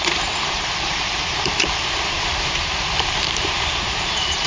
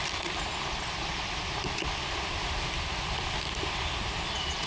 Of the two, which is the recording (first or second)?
second